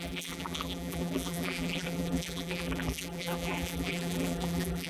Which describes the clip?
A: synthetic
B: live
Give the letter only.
A